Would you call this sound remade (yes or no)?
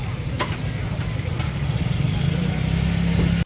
no